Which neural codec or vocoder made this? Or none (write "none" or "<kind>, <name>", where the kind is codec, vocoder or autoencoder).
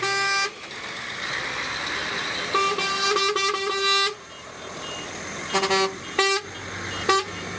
none